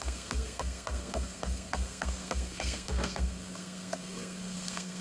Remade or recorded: remade